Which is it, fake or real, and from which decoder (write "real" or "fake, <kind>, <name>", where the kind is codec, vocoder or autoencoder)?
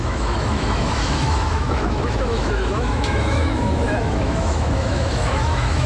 fake, autoencoder, DAC-VAE